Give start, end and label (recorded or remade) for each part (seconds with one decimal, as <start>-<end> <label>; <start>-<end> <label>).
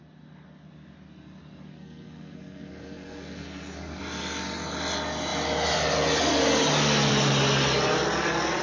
0.0-1.7 recorded; 1.7-4.0 remade; 4.0-8.6 recorded